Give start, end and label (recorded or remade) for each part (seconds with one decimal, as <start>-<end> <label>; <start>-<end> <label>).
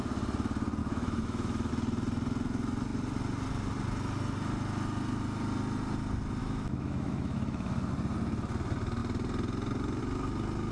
0.0-0.8 recorded; 0.8-1.7 remade; 1.7-6.4 recorded; 6.4-7.9 remade; 7.9-10.7 recorded